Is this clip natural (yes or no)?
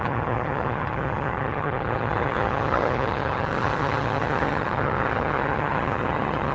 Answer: no